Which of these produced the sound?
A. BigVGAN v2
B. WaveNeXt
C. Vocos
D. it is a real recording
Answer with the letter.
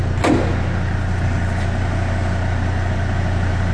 D